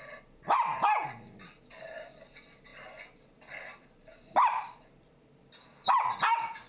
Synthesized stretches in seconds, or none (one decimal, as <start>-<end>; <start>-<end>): none